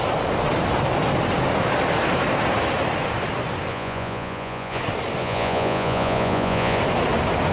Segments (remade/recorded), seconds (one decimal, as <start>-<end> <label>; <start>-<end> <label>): 0.0-3.7 recorded; 3.7-4.8 remade; 4.8-5.2 recorded; 5.2-6.8 remade; 6.8-7.5 recorded